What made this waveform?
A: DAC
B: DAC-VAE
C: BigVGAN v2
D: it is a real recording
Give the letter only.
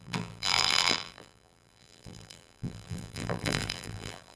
C